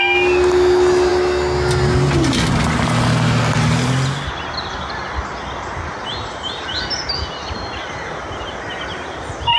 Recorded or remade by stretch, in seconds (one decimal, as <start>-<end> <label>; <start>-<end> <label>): 0.0-9.6 recorded